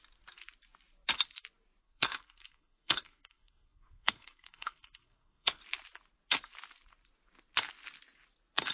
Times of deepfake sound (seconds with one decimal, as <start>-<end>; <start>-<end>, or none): 1.8-5.6